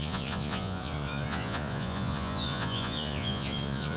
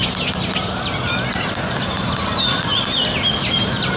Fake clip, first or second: first